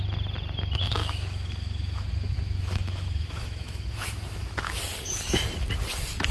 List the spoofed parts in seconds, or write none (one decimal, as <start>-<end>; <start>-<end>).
1.0-4.8